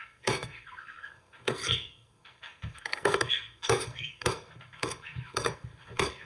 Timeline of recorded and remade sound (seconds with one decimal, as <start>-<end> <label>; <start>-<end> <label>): 0.0-6.3 remade